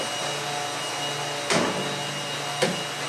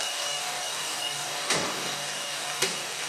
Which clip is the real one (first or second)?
first